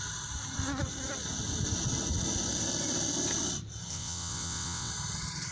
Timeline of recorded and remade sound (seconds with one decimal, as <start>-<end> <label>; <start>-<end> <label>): 0.0-3.9 recorded; 3.9-4.9 remade; 4.9-5.5 recorded